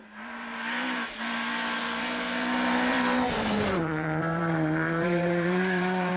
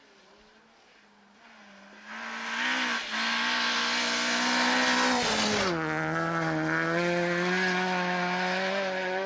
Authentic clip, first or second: second